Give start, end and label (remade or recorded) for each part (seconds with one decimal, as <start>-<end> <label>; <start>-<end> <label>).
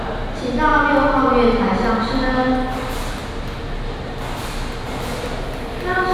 0.0-6.1 recorded